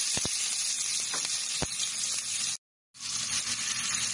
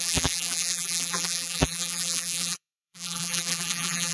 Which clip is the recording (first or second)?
first